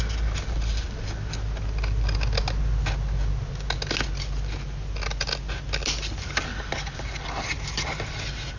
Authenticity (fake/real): real